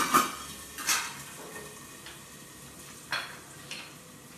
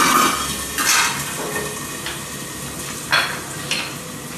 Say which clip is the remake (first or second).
first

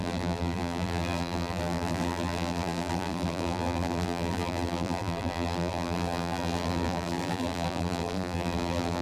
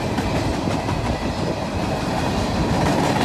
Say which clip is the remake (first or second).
first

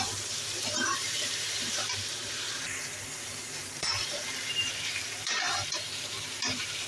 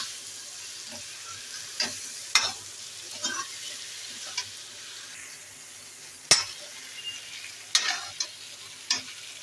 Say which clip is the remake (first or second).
first